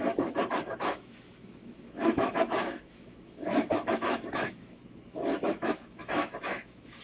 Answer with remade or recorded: remade